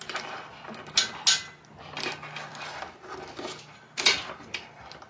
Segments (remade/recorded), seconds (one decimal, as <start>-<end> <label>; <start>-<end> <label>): 0.0-5.1 recorded